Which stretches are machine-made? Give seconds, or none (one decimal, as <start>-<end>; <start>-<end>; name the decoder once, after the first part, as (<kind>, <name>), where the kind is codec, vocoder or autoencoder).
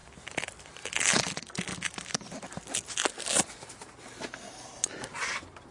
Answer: 0.0-0.6 (vocoder, BigVGAN v2)